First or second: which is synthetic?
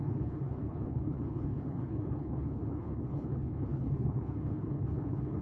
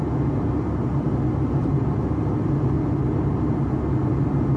first